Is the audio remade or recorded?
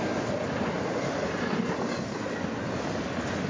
recorded